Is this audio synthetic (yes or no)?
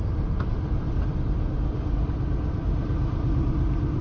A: no